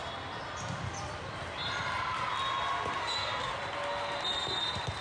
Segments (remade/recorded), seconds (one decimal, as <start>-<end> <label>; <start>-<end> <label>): 0.0-3.0 recorded; 3.0-3.5 remade; 3.5-5.0 recorded